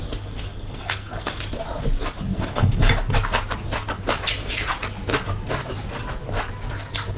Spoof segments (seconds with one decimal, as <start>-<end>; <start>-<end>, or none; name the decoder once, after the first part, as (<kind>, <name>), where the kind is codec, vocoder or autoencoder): 0.5-1.3 (codec, SNAC); 2.3-2.9